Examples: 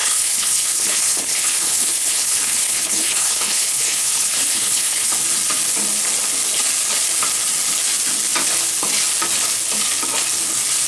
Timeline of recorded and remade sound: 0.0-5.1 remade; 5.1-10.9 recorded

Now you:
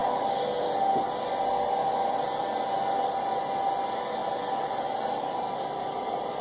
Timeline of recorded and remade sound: 0.0-6.4 recorded

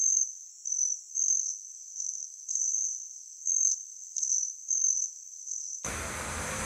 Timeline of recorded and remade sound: 0.0-0.5 remade; 0.5-1.1 recorded; 1.1-6.7 remade

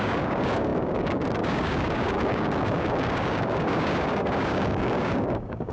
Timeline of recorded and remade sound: 0.0-5.7 remade

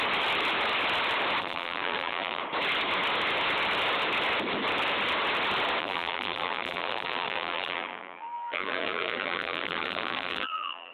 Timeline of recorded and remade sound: 0.0-1.4 recorded; 1.4-2.4 remade; 2.4-5.8 recorded; 5.8-10.9 remade

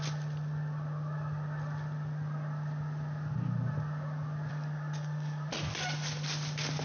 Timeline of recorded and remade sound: 0.0-4.5 recorded; 4.5-5.5 remade; 5.5-6.8 recorded

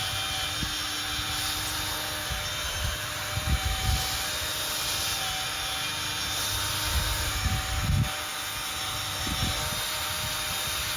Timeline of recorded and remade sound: 0.0-11.0 recorded